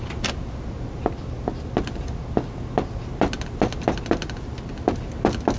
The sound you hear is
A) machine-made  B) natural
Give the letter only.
B